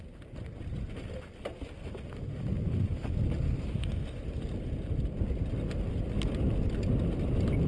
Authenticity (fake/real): real